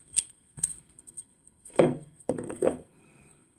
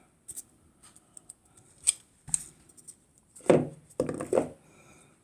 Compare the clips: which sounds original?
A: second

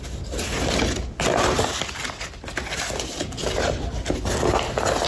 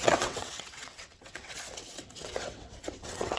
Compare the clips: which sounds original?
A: first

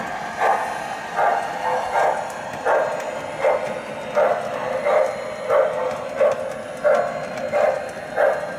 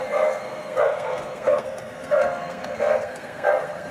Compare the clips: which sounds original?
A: first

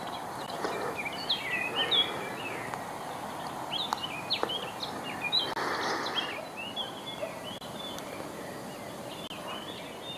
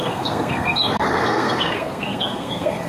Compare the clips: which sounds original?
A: first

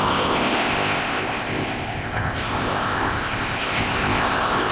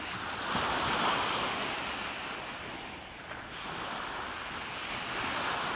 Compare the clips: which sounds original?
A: second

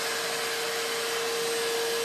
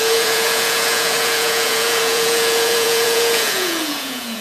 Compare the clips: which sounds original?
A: first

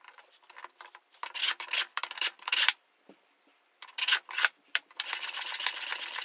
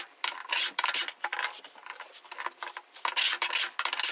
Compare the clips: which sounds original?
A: second